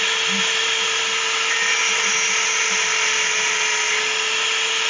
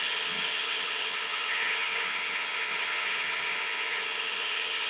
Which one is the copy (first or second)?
second